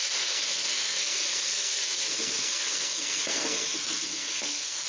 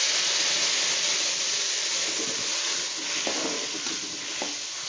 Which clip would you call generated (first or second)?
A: first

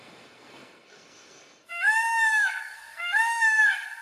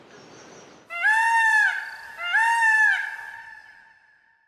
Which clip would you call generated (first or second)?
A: first